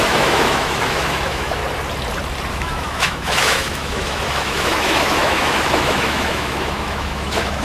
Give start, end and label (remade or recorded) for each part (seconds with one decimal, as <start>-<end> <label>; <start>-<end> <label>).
0.0-1.6 remade; 1.6-2.5 recorded; 2.5-7.6 remade